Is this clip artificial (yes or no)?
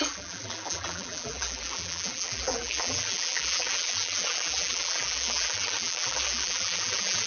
yes